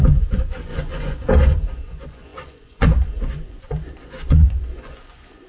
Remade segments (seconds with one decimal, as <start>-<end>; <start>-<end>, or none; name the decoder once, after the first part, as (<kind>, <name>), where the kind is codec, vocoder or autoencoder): 0.0-5.5 (vocoder, Vocos)